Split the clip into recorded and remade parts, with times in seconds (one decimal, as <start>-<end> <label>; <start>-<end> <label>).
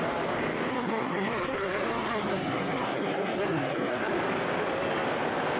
0.0-0.7 recorded; 0.7-4.1 remade; 4.1-5.6 recorded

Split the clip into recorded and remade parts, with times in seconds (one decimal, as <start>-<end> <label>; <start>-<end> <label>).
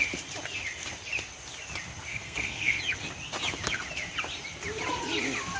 0.0-2.1 recorded; 2.1-2.8 remade; 2.8-5.6 recorded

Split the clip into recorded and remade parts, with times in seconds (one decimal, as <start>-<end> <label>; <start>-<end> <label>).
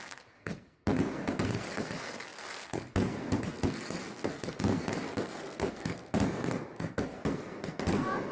0.0-8.3 remade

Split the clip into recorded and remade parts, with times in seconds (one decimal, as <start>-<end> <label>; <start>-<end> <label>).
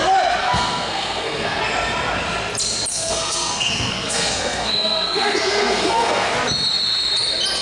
0.0-0.4 recorded; 0.4-1.6 remade; 1.6-2.9 recorded; 2.9-6.3 remade; 6.3-7.6 recorded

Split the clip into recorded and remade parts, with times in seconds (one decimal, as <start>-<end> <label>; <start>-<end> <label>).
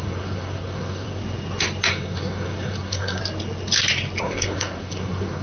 0.0-1.2 remade; 1.2-1.9 recorded; 1.9-3.2 remade; 3.2-4.2 recorded; 4.2-5.4 remade